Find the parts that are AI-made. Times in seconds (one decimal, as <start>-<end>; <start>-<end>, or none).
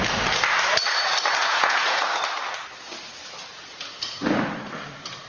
1.4-2.0